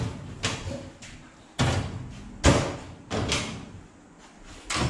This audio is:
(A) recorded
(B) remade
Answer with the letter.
A